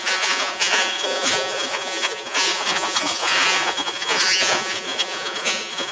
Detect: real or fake fake